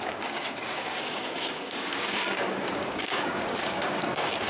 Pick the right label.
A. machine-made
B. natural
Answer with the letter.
A